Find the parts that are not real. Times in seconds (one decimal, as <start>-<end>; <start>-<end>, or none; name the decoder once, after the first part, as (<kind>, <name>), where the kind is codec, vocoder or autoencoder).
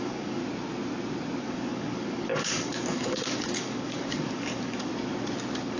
0.0-0.4 (codec, DAC); 1.4-4.9